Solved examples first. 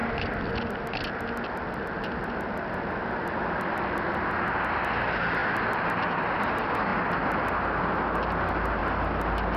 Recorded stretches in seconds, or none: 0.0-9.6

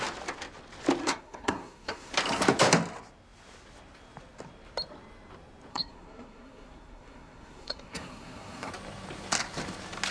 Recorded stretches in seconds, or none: 0.0-1.0; 2.1-5.7; 8.7-10.1

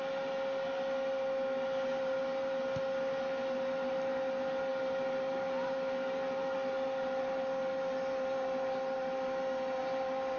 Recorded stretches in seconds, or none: 0.0-10.4

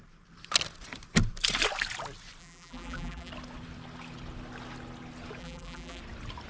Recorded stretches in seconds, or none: 0.0-2.4; 3.3-5.4; 6.0-6.5

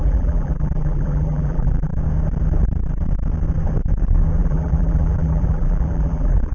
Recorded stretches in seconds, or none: 1.9-4.4

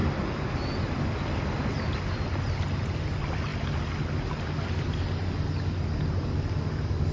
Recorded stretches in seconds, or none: 0.0-7.1